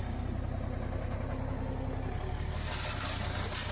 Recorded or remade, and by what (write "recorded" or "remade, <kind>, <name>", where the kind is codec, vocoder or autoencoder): recorded